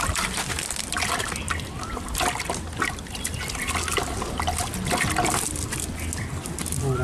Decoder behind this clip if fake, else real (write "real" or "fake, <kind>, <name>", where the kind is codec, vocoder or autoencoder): real